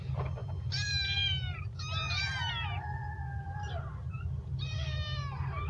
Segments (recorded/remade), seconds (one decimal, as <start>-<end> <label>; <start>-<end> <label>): 0.0-5.7 recorded